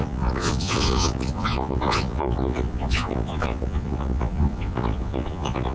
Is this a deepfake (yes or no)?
yes